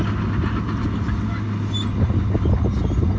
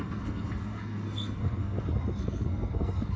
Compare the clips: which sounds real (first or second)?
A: first